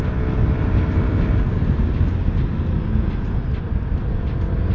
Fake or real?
real